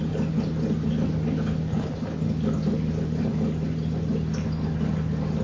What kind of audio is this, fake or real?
real